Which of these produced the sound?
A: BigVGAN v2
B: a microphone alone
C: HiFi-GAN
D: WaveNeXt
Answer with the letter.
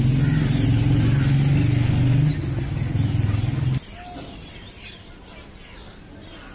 B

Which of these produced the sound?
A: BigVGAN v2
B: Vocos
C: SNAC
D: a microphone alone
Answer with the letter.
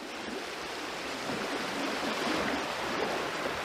A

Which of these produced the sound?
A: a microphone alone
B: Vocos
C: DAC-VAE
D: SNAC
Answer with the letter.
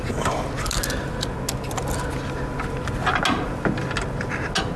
A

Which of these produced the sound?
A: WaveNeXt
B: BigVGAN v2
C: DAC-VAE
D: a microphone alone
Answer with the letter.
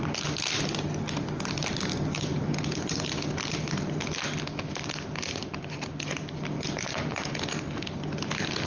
D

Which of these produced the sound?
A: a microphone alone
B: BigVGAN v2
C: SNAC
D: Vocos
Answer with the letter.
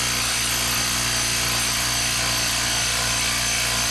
A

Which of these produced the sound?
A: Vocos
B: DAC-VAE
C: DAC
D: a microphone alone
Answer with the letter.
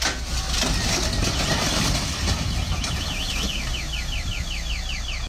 D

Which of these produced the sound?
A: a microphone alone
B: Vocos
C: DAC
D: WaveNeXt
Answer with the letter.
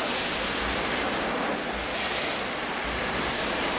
A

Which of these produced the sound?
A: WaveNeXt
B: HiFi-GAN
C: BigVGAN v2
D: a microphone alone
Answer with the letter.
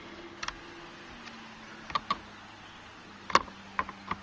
D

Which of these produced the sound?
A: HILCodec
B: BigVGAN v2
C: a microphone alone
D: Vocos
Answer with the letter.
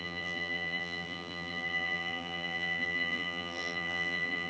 B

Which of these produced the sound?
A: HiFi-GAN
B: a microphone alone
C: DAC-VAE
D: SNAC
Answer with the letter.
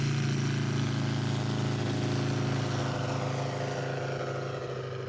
B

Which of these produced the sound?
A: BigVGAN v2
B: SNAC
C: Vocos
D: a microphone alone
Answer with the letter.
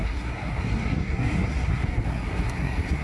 B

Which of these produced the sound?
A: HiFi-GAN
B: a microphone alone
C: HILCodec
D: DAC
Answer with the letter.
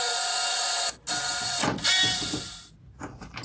B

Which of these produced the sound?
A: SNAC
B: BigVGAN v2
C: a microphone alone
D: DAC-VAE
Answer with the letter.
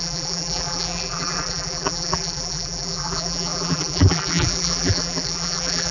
B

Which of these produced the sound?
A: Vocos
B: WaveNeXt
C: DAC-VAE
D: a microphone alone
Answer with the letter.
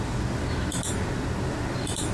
D